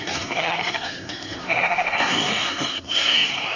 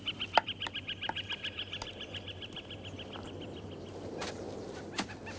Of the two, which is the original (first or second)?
second